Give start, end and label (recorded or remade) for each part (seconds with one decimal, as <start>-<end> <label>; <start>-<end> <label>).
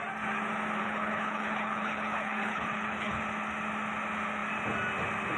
0.0-0.8 recorded; 0.8-3.2 remade; 3.2-5.4 recorded